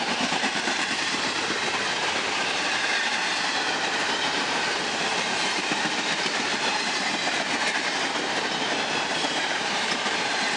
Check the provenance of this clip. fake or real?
fake